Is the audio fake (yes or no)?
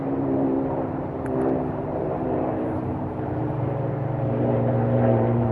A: yes